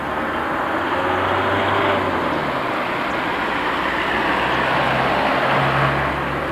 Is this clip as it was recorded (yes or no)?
yes